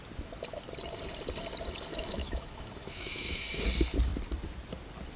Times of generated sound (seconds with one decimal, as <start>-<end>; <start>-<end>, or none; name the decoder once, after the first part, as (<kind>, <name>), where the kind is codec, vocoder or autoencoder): 1.9-3.4 (autoencoder, DAC-VAE)